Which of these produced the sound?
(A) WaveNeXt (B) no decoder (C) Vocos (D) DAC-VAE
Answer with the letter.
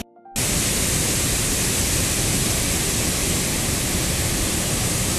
B